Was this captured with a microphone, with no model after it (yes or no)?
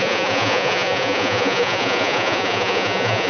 no